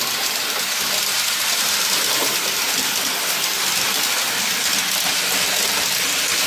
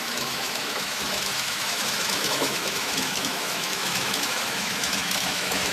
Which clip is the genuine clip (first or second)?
first